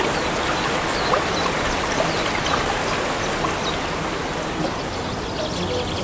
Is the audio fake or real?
real